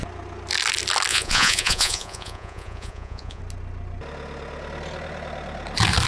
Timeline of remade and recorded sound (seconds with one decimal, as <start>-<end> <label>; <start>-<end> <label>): 0.0-1.1 recorded; 1.1-3.4 remade; 3.4-6.1 recorded